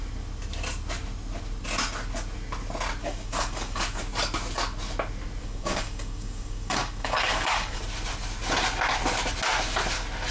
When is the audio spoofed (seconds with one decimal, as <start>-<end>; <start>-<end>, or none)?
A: 3.0-4.0; 5.4-7.8